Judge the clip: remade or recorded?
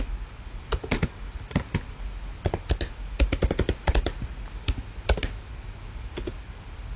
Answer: recorded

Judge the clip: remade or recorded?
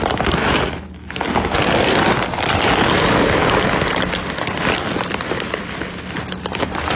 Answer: recorded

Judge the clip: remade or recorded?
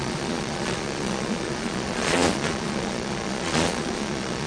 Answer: remade